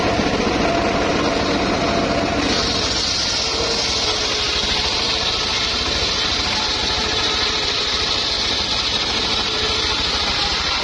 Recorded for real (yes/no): yes